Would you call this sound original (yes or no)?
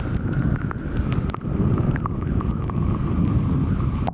yes